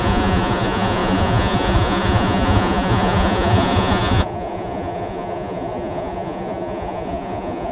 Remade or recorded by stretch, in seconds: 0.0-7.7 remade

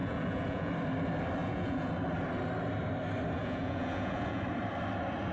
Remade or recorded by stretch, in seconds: 0.0-0.7 remade; 0.7-1.4 recorded; 1.4-1.9 remade; 1.9-3.4 recorded; 3.4-4.4 remade; 4.4-5.3 recorded

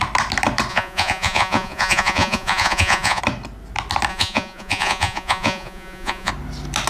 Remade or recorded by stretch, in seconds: 0.0-0.7 recorded; 0.7-3.2 remade; 3.2-4.1 recorded; 4.1-6.3 remade; 6.3-6.9 recorded